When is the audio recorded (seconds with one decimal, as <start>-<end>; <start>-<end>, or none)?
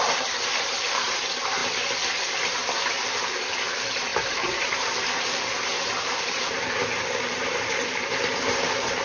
1.6-2.9